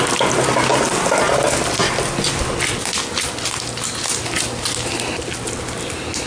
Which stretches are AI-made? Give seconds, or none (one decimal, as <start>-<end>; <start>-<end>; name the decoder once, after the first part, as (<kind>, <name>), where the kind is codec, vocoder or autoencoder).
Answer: none